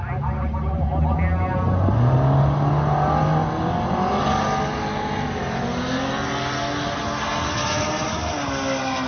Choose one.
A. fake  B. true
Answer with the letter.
B